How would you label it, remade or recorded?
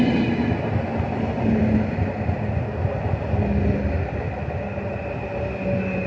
recorded